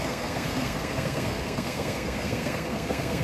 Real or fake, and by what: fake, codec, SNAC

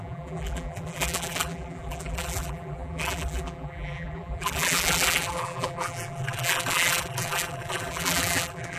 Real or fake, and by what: fake, vocoder, BigVGAN v2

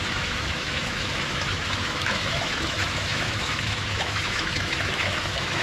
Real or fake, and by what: fake, autoencoder, DAC-VAE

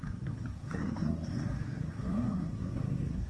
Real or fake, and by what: fake, codec, SNAC